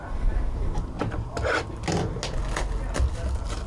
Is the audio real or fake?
real